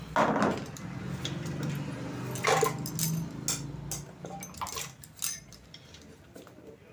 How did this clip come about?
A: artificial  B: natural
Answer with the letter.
B